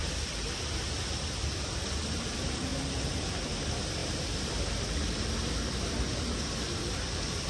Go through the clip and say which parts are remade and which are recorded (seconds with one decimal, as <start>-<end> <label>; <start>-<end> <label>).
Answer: 0.0-7.5 recorded